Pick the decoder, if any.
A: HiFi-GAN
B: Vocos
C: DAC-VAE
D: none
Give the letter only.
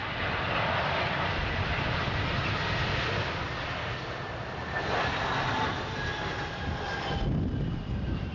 D